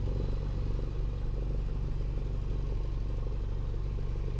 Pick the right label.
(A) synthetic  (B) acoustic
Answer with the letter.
B